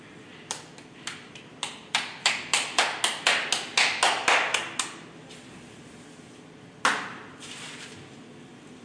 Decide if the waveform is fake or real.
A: real